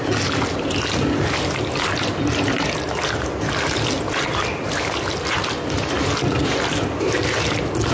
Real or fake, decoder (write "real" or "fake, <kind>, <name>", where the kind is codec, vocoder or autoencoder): real